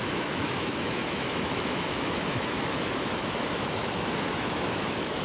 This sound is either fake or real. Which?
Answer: fake